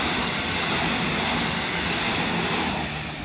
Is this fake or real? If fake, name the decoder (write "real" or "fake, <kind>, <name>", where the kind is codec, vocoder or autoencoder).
real